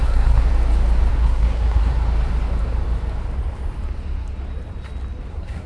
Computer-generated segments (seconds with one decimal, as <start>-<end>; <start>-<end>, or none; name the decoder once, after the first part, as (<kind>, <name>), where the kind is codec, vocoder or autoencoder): 0.0-0.5 (codec, SNAC); 1.1-1.9; 5.3-5.7